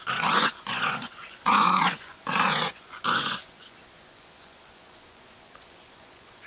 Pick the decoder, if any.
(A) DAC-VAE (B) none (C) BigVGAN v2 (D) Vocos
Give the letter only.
D